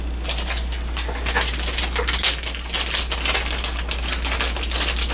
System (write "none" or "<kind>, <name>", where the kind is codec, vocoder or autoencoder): none